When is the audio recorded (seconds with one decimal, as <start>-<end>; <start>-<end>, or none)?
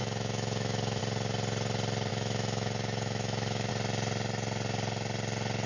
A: 1.0-2.1; 3.7-5.7